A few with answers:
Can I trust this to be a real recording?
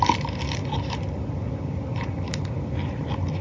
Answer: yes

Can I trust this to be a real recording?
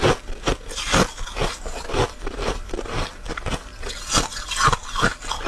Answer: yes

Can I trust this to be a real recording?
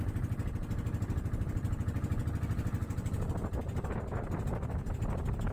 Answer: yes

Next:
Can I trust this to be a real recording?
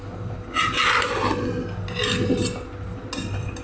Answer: yes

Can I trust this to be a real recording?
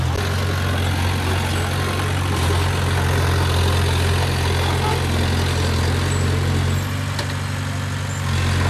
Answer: yes